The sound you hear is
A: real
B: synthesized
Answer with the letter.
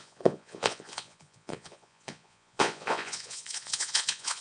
B